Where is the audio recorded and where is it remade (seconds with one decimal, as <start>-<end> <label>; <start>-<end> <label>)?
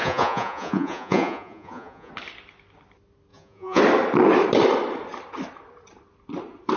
0.0-2.1 remade; 2.1-3.3 recorded; 3.3-3.8 remade; 3.8-6.8 recorded